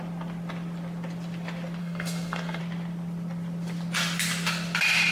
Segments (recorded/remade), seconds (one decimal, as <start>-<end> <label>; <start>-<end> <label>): 0.0-1.8 recorded; 1.8-2.6 remade; 2.6-5.1 recorded